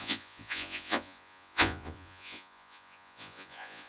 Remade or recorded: remade